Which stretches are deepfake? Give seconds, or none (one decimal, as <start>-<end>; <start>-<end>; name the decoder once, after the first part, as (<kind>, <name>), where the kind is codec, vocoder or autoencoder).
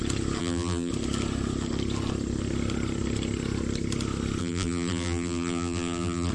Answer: 0.4-0.9 (vocoder, BigVGAN v2); 4.4-6.3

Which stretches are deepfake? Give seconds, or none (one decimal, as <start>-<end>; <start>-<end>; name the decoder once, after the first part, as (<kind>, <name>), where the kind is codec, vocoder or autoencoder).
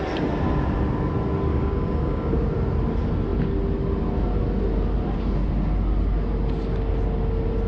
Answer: 1.5-2.3 (codec, DAC)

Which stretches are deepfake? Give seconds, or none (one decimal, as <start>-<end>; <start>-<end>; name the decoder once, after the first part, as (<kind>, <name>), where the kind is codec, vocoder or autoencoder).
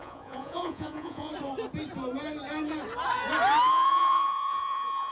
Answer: 0.0-1.3 (vocoder, Vocos); 3.7-5.1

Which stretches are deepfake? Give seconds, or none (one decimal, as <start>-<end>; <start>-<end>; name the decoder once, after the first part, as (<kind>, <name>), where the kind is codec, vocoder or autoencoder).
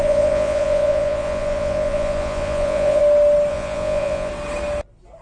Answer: 0.0-3.0 (vocoder, Vocos); 3.5-4.3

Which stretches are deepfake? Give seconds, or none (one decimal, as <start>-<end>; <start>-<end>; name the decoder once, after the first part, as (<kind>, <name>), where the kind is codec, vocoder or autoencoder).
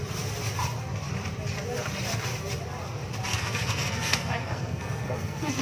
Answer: 3.3-5.6 (codec, SNAC)